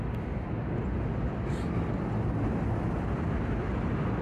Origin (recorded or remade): recorded